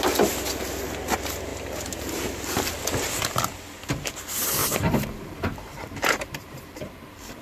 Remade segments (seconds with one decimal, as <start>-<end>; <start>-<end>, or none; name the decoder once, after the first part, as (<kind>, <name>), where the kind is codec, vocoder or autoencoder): 1.5-2.7 (vocoder, BigVGAN v2); 4.6-7.4